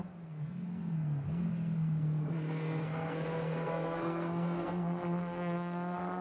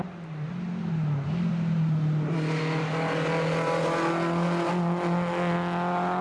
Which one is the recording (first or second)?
second